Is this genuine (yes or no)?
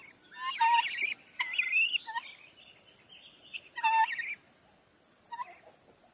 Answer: yes